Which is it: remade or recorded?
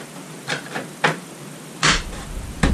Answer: remade